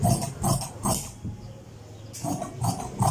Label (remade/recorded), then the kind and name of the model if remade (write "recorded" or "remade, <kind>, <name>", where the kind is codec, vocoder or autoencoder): recorded